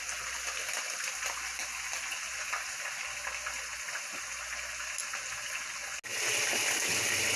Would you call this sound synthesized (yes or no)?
no